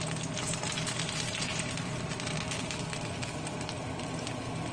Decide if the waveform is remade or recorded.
recorded